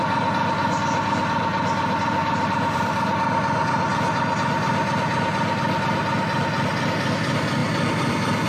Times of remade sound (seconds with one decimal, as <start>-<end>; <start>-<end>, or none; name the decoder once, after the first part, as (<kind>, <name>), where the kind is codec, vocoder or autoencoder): 2.2-2.9 (vocoder, BigVGAN v2); 7.6-8.5